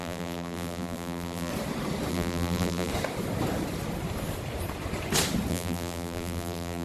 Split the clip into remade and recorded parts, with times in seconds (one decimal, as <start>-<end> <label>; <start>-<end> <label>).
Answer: 0.0-1.5 remade; 1.5-2.1 recorded; 2.1-2.9 remade; 2.9-5.5 recorded; 5.5-6.8 remade